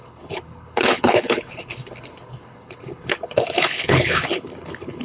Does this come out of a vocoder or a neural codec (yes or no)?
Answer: yes